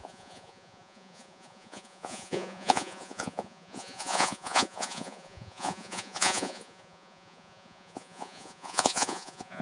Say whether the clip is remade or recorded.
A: remade